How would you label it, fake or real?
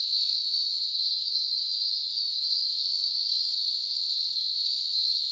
fake